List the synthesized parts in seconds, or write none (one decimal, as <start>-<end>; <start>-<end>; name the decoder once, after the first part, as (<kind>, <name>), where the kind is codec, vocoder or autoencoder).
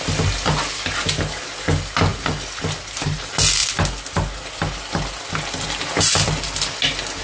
none